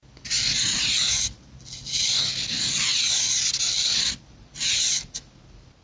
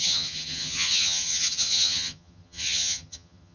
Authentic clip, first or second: first